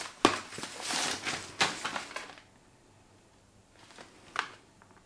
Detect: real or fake real